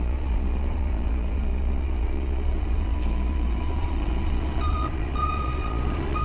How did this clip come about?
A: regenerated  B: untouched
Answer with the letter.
A